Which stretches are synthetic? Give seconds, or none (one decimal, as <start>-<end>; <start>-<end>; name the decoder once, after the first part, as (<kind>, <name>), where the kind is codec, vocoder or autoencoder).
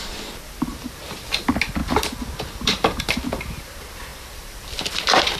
0.7-1.2 (vocoder, BigVGAN v2); 1.8-3.0; 4.1-4.6